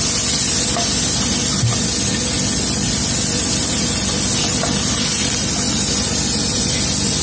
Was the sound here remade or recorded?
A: recorded